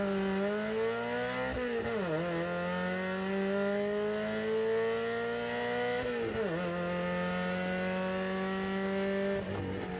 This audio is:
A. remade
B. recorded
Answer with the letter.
B